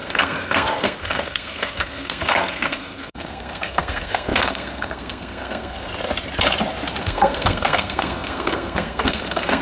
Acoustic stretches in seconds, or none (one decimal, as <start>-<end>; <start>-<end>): 5.9-7.0